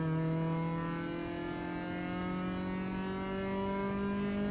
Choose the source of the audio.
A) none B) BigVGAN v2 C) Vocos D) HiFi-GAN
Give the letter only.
A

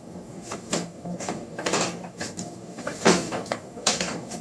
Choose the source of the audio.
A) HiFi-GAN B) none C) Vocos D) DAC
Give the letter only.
D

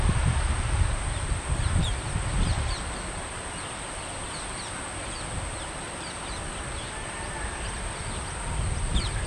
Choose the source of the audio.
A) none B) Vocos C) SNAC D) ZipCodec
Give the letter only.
A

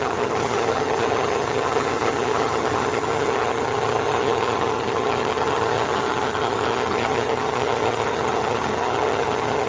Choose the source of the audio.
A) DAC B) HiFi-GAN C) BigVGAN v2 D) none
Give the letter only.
B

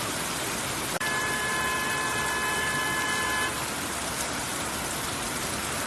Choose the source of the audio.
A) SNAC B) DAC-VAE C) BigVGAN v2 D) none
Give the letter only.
C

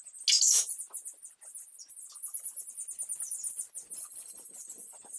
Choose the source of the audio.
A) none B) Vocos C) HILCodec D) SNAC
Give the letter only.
A